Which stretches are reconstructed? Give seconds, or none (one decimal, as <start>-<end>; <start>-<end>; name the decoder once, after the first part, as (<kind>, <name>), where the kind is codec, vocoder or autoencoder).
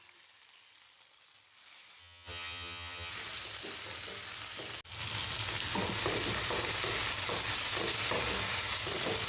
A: 2.0-3.1 (vocoder, HiFi-GAN)